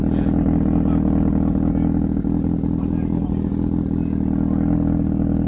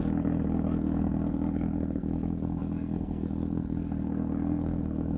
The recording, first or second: first